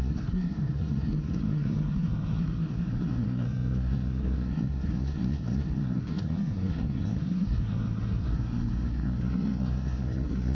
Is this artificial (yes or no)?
yes